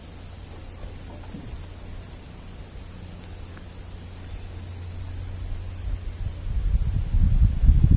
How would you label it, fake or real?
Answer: real